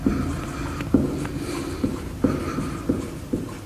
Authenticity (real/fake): real